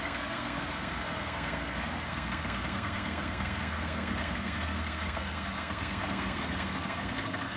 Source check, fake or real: fake